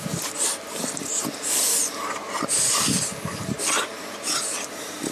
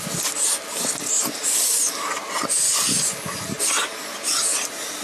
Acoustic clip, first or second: second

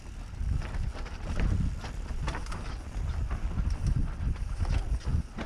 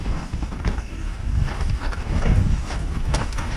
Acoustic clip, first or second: first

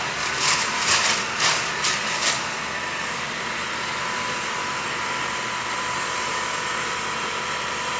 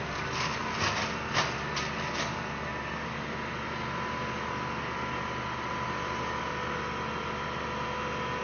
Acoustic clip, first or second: second